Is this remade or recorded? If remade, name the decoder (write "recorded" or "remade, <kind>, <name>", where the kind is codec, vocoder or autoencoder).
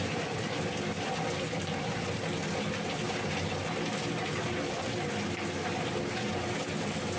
recorded